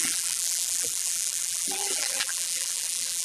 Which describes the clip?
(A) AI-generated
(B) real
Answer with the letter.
A